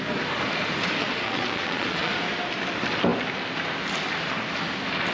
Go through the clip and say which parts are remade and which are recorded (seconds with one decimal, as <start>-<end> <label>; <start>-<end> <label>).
0.0-1.0 recorded; 1.0-2.1 remade; 2.1-5.1 recorded